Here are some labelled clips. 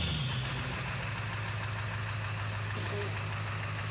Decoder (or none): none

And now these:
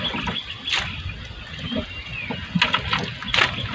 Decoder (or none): none